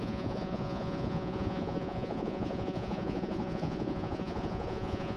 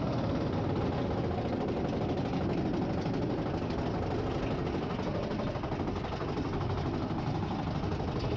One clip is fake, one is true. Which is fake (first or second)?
first